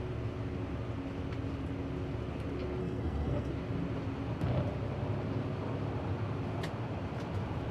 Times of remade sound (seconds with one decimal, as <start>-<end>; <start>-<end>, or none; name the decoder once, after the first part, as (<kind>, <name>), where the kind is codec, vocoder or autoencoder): 2.8-3.5 (codec, SNAC)